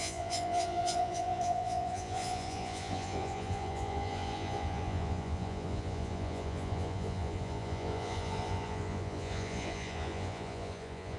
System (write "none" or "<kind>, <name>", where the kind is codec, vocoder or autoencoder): vocoder, Vocos